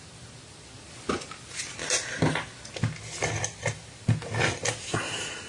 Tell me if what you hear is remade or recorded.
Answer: recorded